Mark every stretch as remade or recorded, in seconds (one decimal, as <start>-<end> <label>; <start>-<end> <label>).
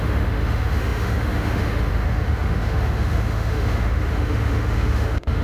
0.0-5.4 remade